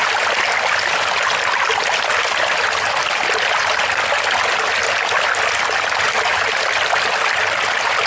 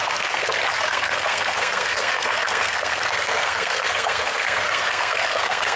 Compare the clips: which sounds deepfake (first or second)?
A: second